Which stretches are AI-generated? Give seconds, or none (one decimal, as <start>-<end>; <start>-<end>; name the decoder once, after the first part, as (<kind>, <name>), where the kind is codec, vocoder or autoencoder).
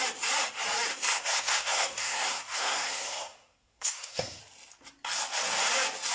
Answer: 0.9-4.4 (codec, SNAC)